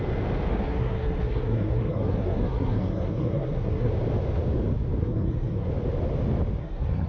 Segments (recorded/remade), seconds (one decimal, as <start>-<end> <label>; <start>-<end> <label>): 0.0-0.5 recorded; 0.5-3.9 remade; 3.9-5.0 recorded; 5.0-5.7 remade; 5.7-6.6 recorded; 6.6-7.1 remade